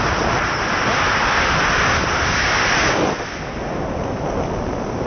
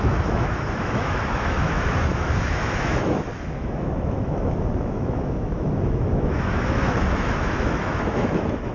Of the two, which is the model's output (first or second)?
second